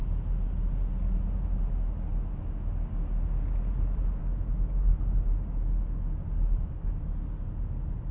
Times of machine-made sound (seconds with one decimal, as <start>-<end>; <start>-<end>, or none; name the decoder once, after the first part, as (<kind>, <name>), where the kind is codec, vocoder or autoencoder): none